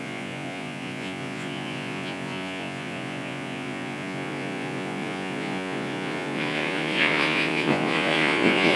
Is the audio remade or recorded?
remade